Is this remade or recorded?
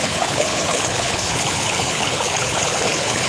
remade